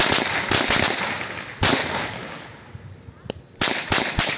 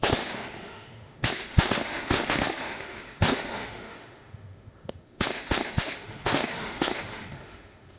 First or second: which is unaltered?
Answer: first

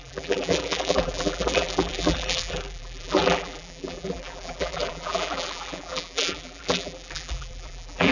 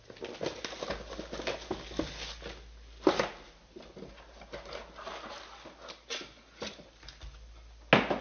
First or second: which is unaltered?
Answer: second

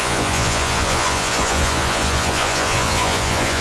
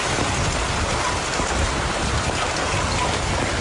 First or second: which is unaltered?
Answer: second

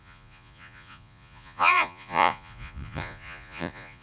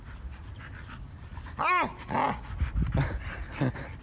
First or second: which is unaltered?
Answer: second